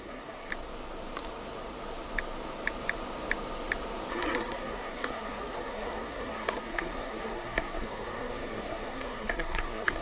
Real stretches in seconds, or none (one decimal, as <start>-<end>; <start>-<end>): 0.5-4.1